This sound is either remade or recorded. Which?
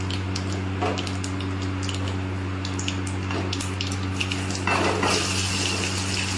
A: recorded